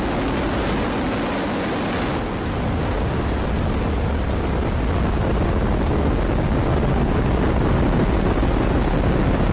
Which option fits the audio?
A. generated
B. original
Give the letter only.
B